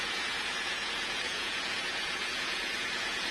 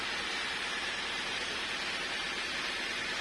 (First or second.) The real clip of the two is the second